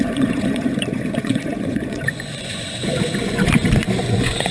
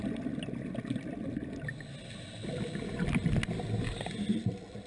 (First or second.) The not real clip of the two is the first